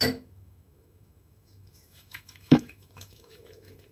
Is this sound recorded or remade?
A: remade